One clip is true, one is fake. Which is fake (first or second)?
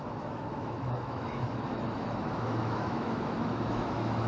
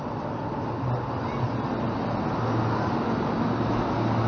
first